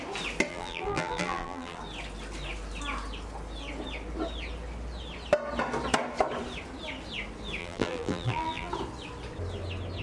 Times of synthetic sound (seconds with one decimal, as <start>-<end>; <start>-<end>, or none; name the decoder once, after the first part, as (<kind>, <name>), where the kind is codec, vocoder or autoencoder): 0.5-1.8 (vocoder, BigVGAN v2); 7.6-8.7